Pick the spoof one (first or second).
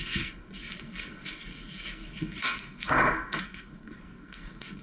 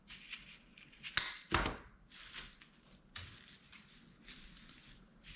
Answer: first